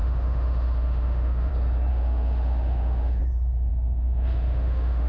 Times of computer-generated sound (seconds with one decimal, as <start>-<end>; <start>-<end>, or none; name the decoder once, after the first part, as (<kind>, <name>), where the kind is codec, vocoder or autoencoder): 0.0-1.5 (autoencoder, DAC-VAE); 1.9-3.2; 3.7-5.1